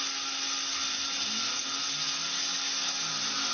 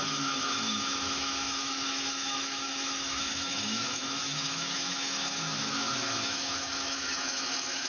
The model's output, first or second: second